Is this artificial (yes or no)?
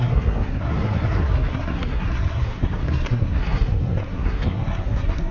yes